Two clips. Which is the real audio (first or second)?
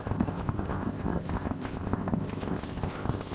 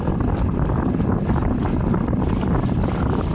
second